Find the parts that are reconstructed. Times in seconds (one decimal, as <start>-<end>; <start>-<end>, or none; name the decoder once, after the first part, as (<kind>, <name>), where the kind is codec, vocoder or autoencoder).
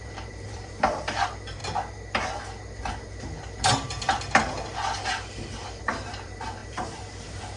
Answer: 0.0-1.6 (vocoder, BigVGAN v2); 5.8-7.6